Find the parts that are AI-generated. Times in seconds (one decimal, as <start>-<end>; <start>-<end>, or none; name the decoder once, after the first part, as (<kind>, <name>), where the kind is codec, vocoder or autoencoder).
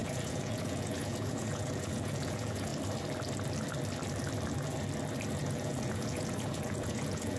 0.0-2.7 (vocoder, Vocos); 5.3-7.4